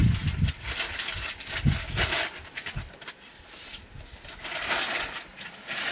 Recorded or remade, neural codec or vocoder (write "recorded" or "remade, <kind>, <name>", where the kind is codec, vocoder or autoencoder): recorded